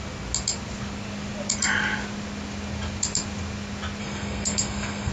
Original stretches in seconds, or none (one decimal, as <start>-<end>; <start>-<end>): 0.0-4.0